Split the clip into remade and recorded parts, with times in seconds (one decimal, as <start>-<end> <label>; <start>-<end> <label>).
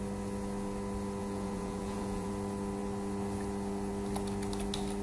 0.0-1.2 recorded; 1.2-2.3 remade; 2.3-5.0 recorded